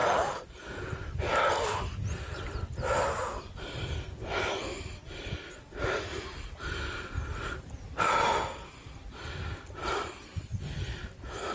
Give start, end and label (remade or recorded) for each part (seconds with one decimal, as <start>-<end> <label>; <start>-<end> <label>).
0.0-0.7 remade; 0.7-6.1 recorded; 6.1-8.1 remade; 8.1-9.8 recorded; 9.8-10.4 remade; 10.4-11.5 recorded